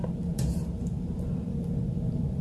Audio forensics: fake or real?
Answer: fake